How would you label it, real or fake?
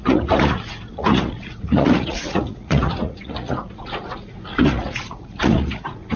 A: fake